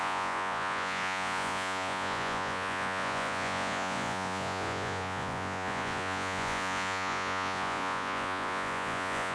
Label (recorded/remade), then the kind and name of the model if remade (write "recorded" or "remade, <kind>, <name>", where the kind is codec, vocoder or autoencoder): remade, vocoder, Vocos